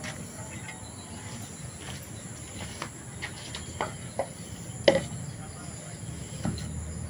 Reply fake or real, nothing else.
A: real